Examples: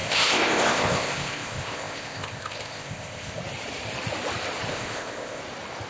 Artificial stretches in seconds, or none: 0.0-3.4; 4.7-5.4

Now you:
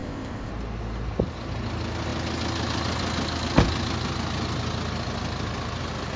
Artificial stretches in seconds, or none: 0.0-0.5

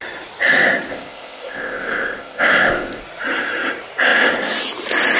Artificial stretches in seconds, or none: 0.9-3.0

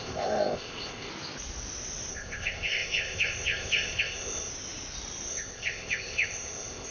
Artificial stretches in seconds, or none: 0.0-1.1; 2.1-4.5; 5.3-6.9

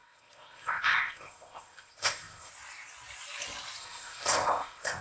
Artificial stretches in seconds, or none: 0.0-2.5; 3.8-5.0

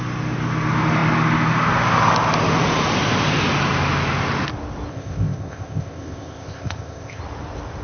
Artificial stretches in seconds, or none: 4.9-7.2

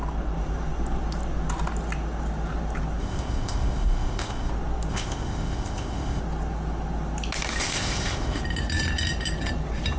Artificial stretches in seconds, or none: 3.0-4.5; 4.9-6.2; 7.6-8.4

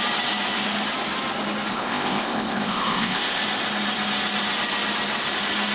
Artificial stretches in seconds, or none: 1.7-3.4